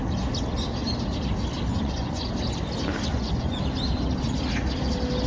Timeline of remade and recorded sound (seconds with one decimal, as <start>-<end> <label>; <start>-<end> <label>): 0.0-1.7 recorded; 1.7-2.3 remade; 2.3-3.1 recorded; 3.1-3.6 remade; 3.6-5.3 recorded